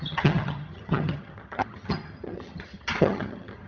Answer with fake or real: fake